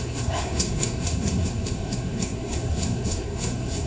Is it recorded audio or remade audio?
remade